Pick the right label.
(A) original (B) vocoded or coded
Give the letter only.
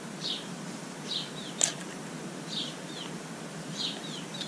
A